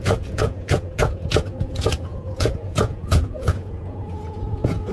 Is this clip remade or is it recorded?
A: remade